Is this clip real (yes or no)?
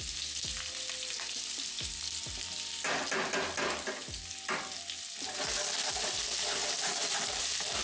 yes